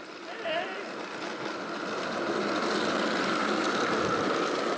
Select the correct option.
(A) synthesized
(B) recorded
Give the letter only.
B